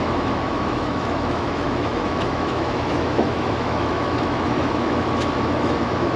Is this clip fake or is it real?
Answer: fake